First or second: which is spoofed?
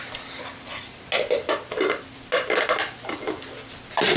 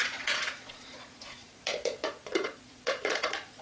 second